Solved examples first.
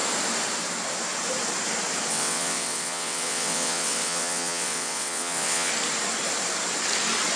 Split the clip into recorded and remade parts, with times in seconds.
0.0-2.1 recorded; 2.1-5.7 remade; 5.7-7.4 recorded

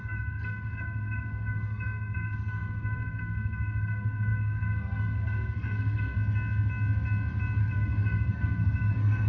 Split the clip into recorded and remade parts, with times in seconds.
0.0-6.2 remade; 6.2-7.6 recorded; 7.6-9.3 remade

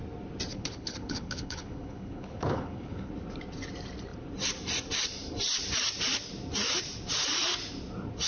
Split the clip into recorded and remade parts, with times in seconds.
0.0-0.5 recorded; 0.5-3.1 remade; 3.1-8.3 recorded

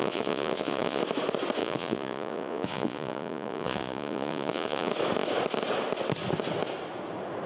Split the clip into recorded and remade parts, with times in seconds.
0.0-1.0 remade; 1.0-1.6 recorded; 1.6-4.9 remade; 4.9-7.5 recorded

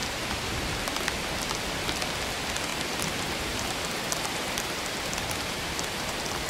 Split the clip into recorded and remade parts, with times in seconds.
0.0-0.6 remade; 0.6-2.7 recorded; 2.7-6.5 remade

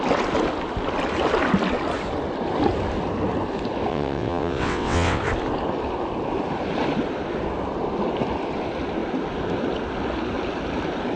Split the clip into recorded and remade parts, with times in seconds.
0.0-3.9 recorded; 3.9-5.2 remade; 5.2-11.2 recorded

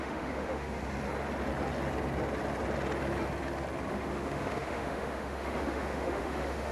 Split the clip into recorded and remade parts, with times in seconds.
0.0-0.8 remade; 0.8-3.9 recorded; 3.9-6.7 remade

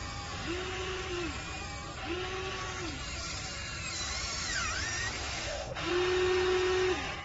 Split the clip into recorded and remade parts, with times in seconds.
0.0-5.2 recorded; 5.2-5.9 remade; 5.9-7.2 recorded